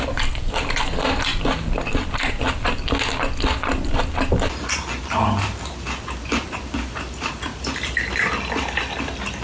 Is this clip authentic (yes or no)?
yes